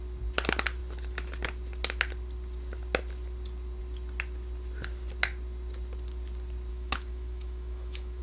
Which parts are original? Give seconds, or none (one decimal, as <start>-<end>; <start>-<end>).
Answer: 0.0-6.7